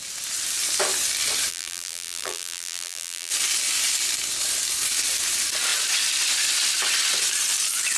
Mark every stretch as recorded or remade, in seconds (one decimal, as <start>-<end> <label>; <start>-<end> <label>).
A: 0.0-1.5 recorded; 1.5-3.3 remade; 3.3-8.0 recorded